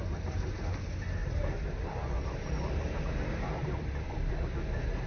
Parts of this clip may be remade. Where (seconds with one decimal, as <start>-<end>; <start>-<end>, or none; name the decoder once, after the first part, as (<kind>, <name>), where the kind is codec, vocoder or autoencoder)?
1.2-4.3 (vocoder, BigVGAN v2)